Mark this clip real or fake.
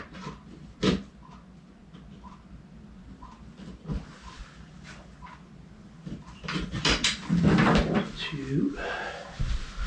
real